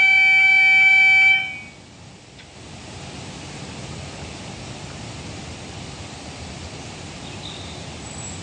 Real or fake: real